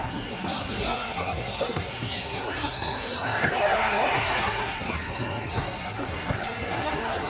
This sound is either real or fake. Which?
fake